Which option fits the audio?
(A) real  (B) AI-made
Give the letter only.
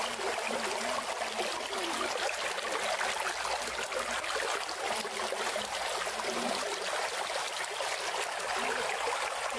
A